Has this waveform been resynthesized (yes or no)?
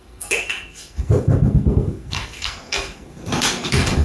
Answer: yes